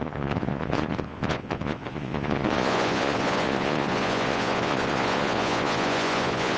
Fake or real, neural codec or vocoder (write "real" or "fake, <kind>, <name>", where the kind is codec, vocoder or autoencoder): fake, vocoder, Vocos